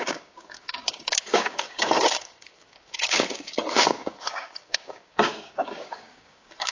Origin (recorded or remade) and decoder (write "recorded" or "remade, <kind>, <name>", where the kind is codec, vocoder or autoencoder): remade, codec, DAC